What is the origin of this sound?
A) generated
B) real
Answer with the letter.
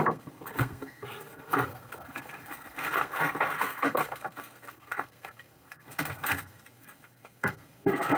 A